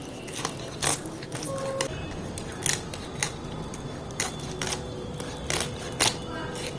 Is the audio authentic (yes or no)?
yes